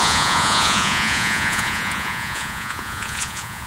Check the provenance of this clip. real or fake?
fake